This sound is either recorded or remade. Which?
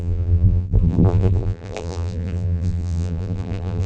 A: remade